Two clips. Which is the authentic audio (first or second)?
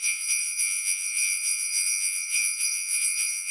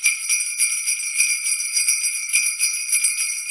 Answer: second